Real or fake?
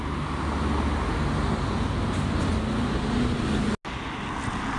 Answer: real